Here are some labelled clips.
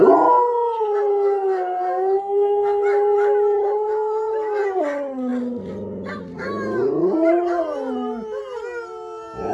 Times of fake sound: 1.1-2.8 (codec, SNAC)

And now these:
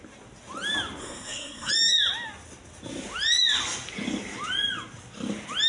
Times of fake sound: 1.0-1.7 (codec, SNAC)

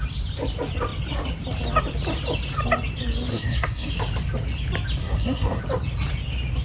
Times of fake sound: 3.3-3.9 (codec, SNAC); 5.0-5.6

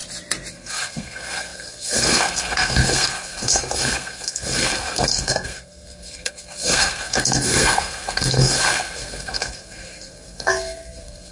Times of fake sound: 0.5-11.3 (codec, SNAC)

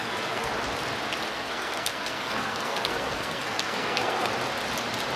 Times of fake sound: 0.0-0.5 (codec, SNAC); 1.3-4.3

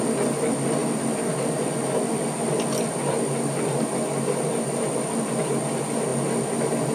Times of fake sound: none

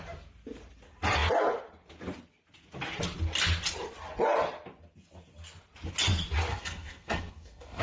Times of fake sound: 6.5-7.8 (codec, SNAC)